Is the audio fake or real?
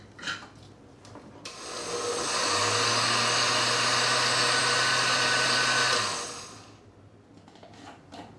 real